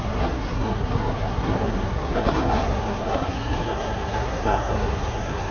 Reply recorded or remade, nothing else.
remade